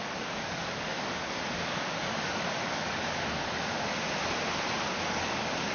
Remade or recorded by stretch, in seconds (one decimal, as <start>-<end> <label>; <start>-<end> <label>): 0.0-3.9 remade; 3.9-5.1 recorded; 5.1-5.7 remade

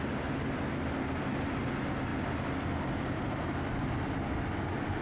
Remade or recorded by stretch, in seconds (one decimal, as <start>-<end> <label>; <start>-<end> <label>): 0.0-5.0 recorded

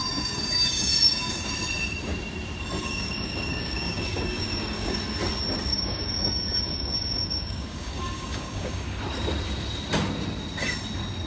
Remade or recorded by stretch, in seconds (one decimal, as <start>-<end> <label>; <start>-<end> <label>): 0.0-1.5 remade; 1.5-2.8 recorded; 2.8-5.0 remade; 5.0-5.7 recorded; 5.7-9.0 remade; 9.0-11.3 recorded

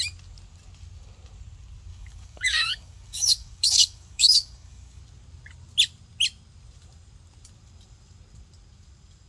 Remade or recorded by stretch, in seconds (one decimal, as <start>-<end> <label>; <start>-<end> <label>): 0.0-1.9 recorded; 1.9-5.0 remade; 5.0-9.3 recorded

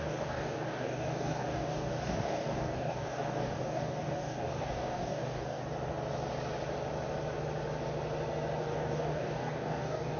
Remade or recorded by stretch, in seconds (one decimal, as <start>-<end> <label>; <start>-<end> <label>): 0.0-5.6 remade; 5.6-8.6 recorded; 8.6-10.2 remade